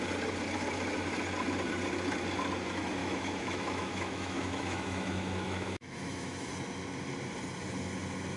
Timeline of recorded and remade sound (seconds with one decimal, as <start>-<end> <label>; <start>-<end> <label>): 0.0-3.0 recorded; 3.0-6.5 remade; 6.5-8.4 recorded